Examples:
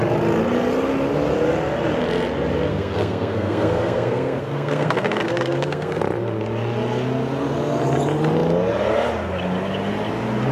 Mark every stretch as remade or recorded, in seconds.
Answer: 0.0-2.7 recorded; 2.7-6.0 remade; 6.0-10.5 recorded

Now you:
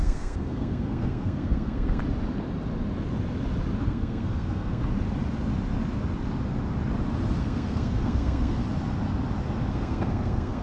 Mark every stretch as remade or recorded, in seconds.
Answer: 0.0-2.0 remade; 2.0-3.8 recorded; 3.8-4.8 remade; 4.8-7.4 recorded; 7.4-8.6 remade; 8.6-9.7 recorded; 9.7-10.6 remade

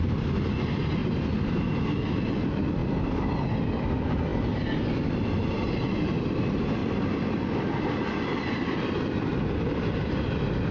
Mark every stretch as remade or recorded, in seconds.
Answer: 0.0-10.7 recorded

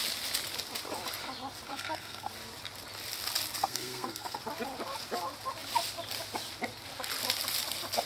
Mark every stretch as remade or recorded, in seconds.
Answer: 0.0-1.7 recorded; 1.7-2.3 remade; 2.3-3.6 recorded; 3.6-4.4 remade; 4.4-8.1 recorded

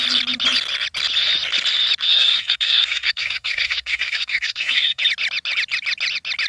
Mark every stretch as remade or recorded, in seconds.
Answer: 0.0-2.1 recorded; 2.1-5.0 remade; 5.0-6.5 recorded

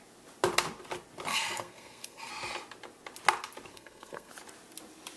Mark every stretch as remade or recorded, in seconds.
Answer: 0.0-1.3 recorded; 1.3-2.3 remade; 2.3-3.7 recorded; 3.7-4.3 remade; 4.3-5.2 recorded